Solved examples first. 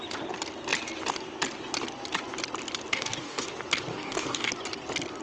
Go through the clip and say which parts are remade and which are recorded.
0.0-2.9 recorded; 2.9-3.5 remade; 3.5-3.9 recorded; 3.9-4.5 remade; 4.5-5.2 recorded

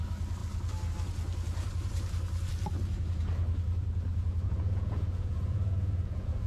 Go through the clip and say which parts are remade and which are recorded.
0.0-4.1 recorded; 4.1-6.5 remade

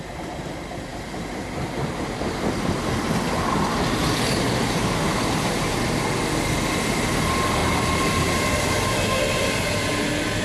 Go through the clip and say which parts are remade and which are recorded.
0.0-4.0 recorded; 4.0-5.2 remade; 5.2-7.6 recorded; 7.6-9.7 remade; 9.7-10.4 recorded

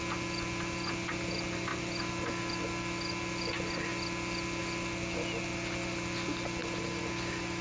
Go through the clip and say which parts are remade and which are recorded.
0.0-6.6 recorded; 6.6-7.6 remade

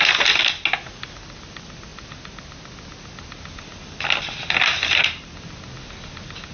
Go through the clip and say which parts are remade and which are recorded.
0.0-6.5 recorded